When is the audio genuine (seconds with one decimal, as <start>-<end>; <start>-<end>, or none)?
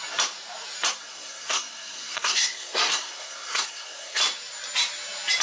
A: 0.0-1.0; 4.2-5.4